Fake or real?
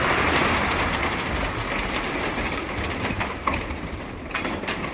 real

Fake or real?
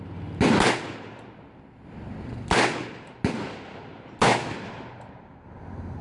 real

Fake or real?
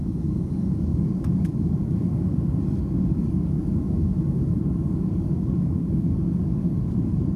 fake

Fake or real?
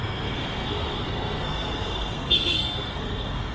fake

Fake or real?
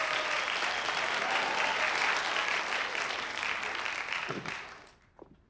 real